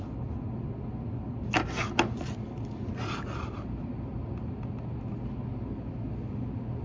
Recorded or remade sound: recorded